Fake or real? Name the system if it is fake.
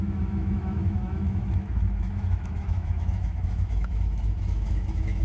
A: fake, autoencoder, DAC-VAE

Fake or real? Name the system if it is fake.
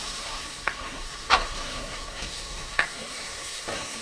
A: fake, codec, SNAC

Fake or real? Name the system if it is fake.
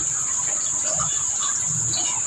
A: fake, vocoder, BigVGAN v2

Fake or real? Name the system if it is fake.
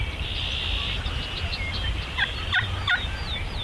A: real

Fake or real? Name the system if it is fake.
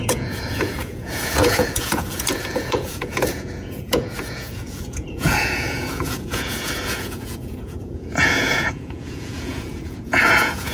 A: fake, vocoder, Vocos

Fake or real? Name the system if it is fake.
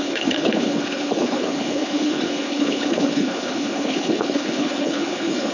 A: fake, codec, HILCodec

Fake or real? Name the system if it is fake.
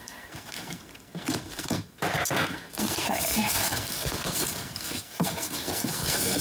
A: fake, codec, SNAC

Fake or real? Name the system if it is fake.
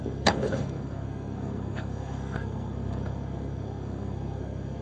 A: fake, codec, SNAC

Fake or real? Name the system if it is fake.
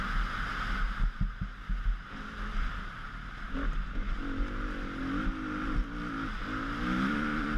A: real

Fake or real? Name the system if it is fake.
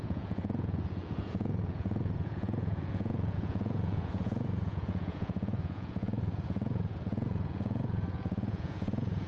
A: fake, vocoder, Vocos